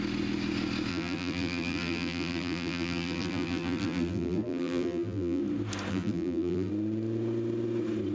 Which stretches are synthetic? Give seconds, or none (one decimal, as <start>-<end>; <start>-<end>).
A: 0.9-5.4; 5.9-6.7